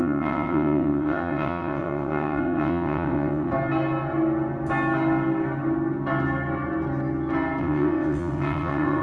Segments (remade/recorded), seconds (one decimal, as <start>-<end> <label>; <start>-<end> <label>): 0.0-3.5 remade; 3.5-7.6 recorded; 7.6-9.0 remade